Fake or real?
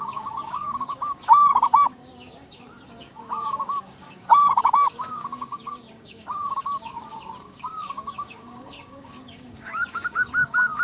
fake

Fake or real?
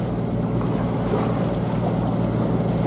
real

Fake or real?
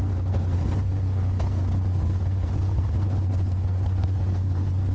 fake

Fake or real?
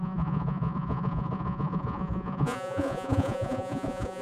fake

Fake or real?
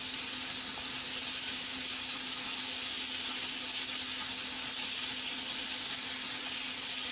real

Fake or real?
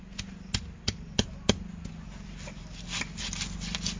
real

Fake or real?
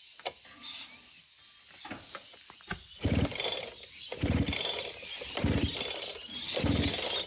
real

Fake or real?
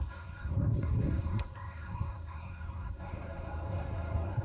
fake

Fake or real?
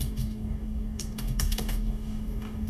fake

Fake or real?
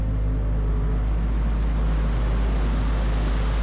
real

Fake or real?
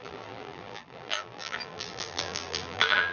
fake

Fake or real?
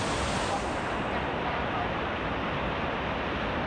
real